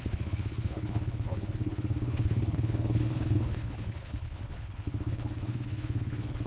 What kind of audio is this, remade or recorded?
remade